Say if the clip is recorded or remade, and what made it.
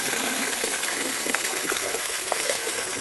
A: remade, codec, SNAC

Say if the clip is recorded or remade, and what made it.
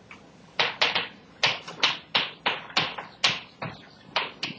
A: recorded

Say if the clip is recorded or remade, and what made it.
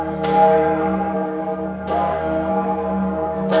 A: remade, codec, SNAC